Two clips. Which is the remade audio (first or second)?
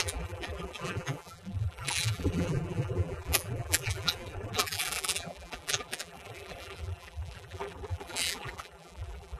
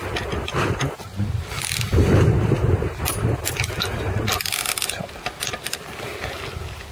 first